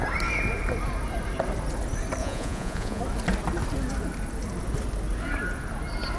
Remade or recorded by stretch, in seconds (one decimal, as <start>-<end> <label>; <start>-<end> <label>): 0.0-2.2 recorded; 2.2-3.0 remade; 3.0-6.2 recorded